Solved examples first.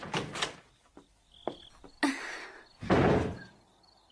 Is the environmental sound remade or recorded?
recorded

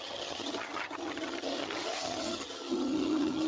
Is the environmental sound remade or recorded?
remade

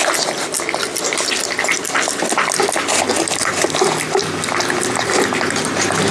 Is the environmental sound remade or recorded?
recorded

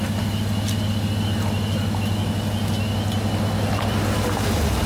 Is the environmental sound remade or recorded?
recorded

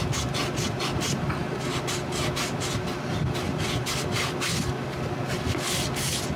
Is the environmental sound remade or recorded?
recorded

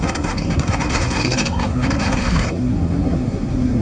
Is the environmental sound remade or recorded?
remade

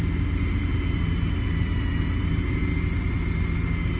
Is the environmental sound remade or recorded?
recorded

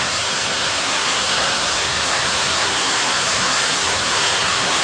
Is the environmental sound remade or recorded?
remade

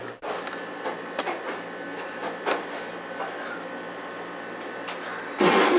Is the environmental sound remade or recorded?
recorded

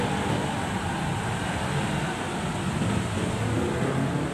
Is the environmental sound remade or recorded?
recorded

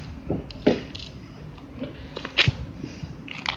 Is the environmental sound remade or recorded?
recorded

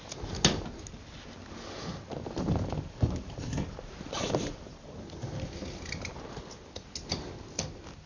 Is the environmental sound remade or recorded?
recorded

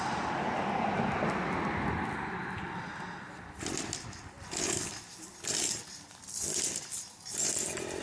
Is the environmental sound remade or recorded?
recorded